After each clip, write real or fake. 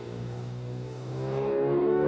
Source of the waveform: fake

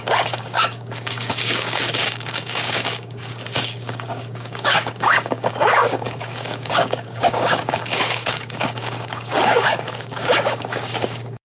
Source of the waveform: fake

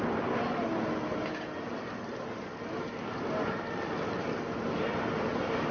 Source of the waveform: real